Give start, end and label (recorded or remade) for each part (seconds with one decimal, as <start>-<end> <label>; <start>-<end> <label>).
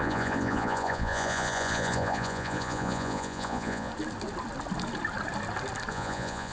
0.0-3.9 remade; 3.9-5.9 recorded; 5.9-6.5 remade